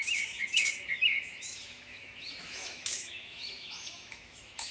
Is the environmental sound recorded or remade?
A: remade